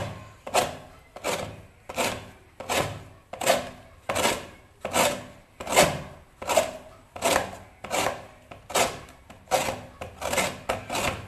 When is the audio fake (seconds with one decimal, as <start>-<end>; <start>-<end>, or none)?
none

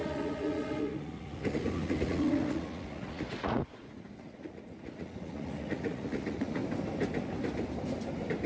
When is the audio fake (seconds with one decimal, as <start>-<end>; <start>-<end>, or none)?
0.0-6.6

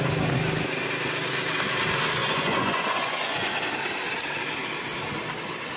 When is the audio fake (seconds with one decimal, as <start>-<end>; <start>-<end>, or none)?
2.2-3.5

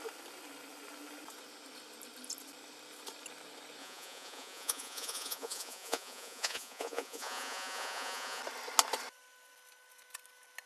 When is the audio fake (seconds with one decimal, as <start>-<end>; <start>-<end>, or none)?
3.8-8.4